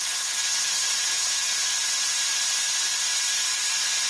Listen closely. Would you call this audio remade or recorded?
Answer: recorded